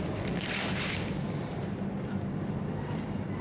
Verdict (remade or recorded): remade